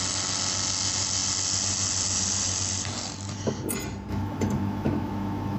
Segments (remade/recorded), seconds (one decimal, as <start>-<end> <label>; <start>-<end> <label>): 0.0-4.1 recorded; 4.1-5.6 remade